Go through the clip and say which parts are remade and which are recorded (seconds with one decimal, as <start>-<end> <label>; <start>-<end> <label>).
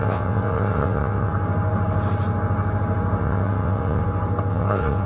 0.0-1.3 remade; 1.3-3.2 recorded; 3.2-4.0 remade; 4.0-4.5 recorded; 4.5-5.1 remade